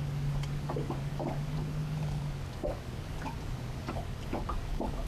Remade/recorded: remade